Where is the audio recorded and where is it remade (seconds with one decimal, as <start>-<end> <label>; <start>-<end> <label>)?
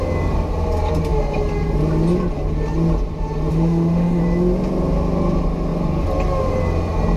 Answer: 0.0-3.5 recorded; 3.5-4.2 remade; 4.2-7.2 recorded